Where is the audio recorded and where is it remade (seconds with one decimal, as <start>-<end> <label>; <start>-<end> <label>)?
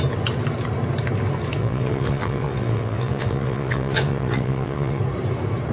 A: 0.0-1.6 recorded; 1.6-5.0 remade; 5.0-5.7 recorded